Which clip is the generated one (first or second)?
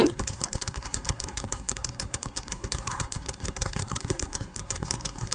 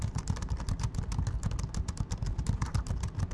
first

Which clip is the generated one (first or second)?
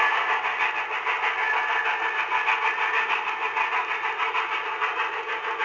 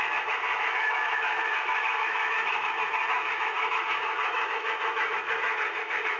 second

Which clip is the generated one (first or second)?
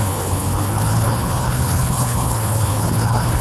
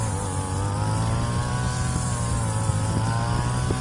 first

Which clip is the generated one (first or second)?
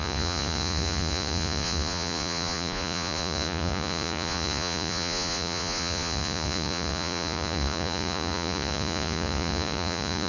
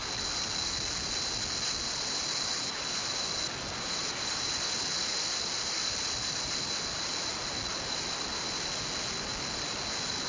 first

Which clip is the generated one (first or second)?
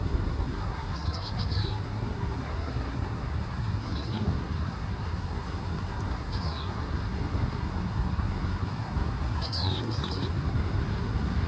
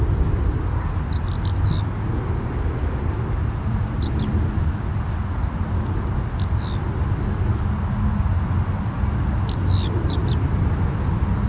first